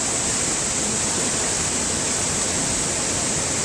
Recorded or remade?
recorded